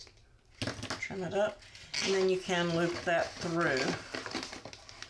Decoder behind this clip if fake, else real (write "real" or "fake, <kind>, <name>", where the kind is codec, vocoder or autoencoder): real